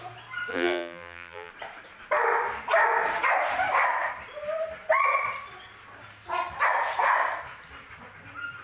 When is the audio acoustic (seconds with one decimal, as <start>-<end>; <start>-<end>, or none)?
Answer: 0.0-0.5; 1.5-8.6